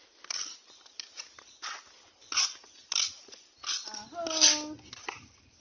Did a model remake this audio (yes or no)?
no